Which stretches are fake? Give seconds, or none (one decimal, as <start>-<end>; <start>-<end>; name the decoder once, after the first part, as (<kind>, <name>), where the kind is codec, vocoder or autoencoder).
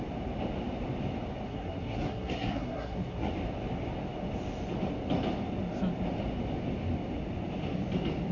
1.5-3.3 (codec, SNAC)